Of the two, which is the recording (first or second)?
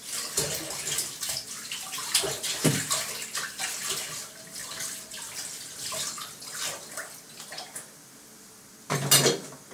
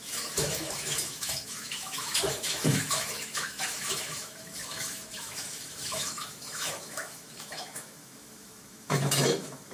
first